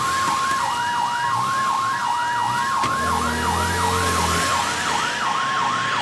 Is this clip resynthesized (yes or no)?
no